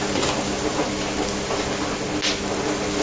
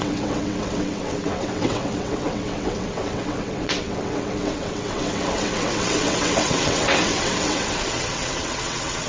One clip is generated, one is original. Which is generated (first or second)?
second